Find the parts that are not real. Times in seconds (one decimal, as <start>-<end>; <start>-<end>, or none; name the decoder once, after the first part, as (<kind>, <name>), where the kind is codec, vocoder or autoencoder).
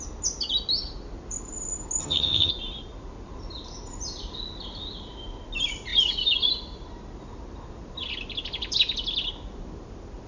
2.0-2.5 (vocoder, HiFi-GAN)